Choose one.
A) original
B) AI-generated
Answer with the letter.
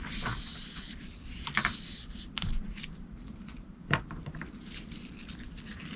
B